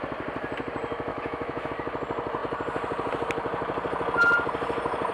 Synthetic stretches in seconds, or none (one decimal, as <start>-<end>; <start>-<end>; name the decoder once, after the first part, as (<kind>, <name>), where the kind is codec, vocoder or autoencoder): 1.1-1.7 (autoencoder, DAC-VAE)